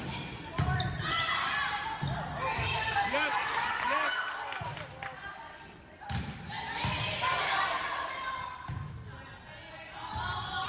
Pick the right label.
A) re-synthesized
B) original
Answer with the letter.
B